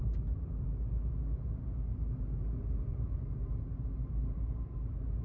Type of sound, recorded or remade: remade